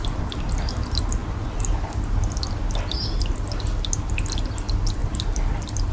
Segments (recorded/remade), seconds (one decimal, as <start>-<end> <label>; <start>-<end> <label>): 0.0-5.9 recorded